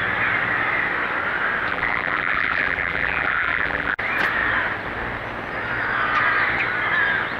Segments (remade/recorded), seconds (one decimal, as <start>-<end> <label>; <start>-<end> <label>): 0.0-1.7 recorded; 1.7-4.0 remade; 4.0-7.4 recorded